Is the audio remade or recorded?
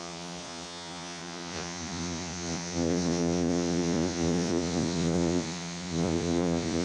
remade